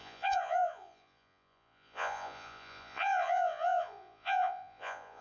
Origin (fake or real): fake